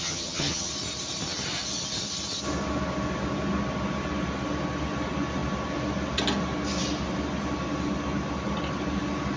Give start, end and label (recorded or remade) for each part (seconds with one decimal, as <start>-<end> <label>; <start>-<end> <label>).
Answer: 0.0-0.7 remade; 0.7-9.4 recorded